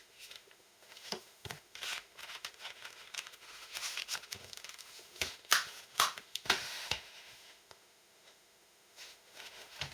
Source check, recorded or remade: remade